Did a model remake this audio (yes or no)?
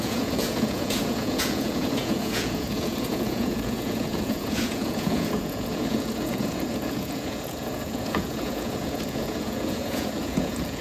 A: yes